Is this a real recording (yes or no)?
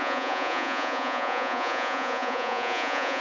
no